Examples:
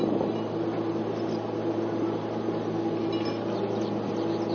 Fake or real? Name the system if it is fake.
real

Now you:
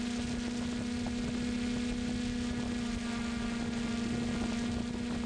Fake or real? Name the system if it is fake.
real